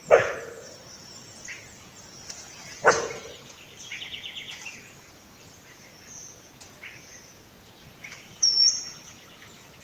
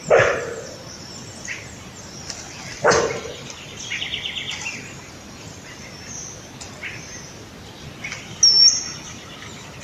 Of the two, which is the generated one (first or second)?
first